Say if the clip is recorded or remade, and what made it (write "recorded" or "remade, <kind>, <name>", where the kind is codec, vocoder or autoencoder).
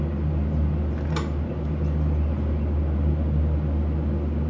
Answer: recorded